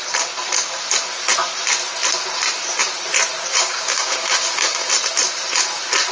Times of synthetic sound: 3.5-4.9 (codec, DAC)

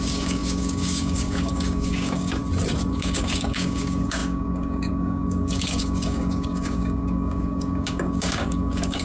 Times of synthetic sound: 0.0-2.4 (codec, DAC); 2.9-9.0

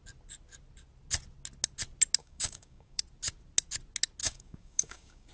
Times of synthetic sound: 2.2-3.0 (codec, DAC); 4.2-5.3

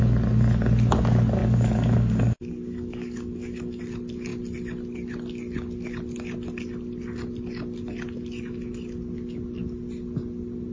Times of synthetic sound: 1.4-3.8 (codec, DAC)

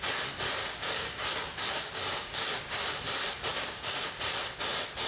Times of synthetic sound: 0.6-3.0 (codec, DAC); 3.5-4.1

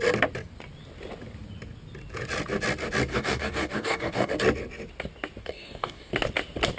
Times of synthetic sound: 3.1-4.3 (codec, DAC); 5.4-6.1